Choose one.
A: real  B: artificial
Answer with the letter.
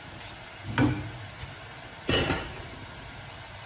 A